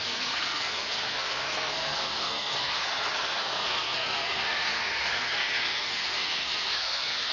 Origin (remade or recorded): remade